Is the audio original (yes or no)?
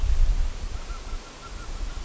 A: yes